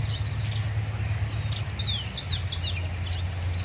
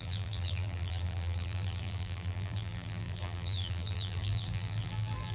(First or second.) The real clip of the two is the first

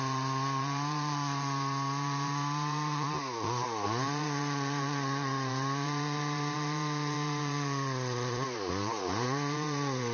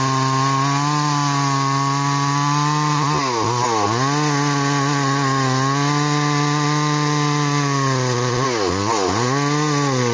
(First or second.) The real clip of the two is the second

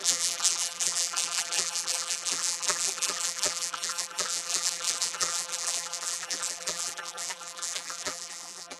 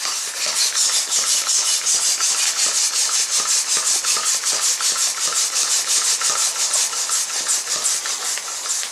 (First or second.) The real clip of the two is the second